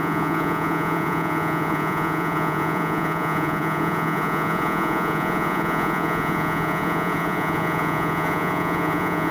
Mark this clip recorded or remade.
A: remade